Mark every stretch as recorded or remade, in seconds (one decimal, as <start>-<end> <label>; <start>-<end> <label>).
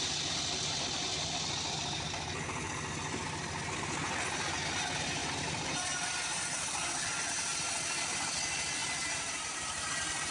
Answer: 0.0-5.2 recorded; 5.2-7.2 remade; 7.2-8.8 recorded; 8.8-10.3 remade